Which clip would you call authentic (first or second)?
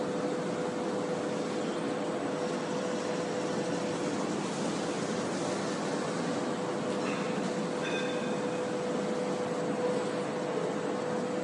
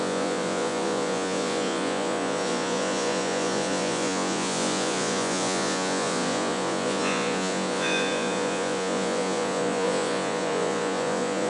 first